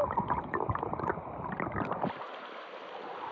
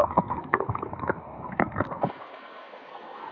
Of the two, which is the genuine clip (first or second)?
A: first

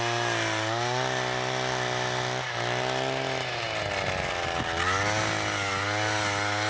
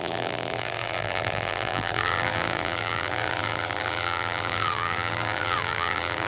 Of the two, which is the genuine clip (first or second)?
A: first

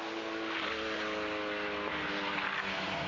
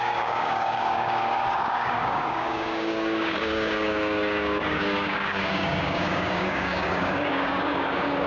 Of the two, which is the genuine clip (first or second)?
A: first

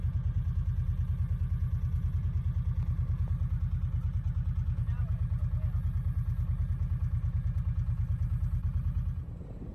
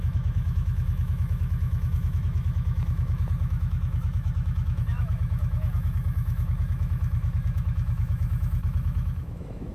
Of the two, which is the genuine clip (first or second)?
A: first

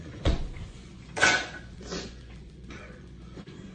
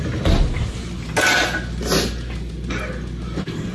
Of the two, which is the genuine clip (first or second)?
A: second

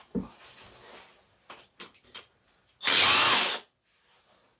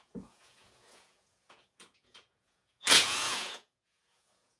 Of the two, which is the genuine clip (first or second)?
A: first